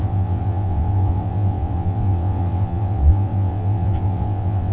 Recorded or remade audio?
remade